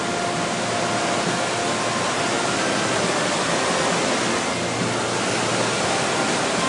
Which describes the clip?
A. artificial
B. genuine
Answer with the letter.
B